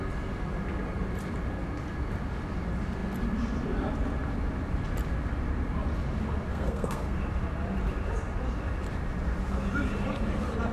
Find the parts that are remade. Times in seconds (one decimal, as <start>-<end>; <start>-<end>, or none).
6.5-7.2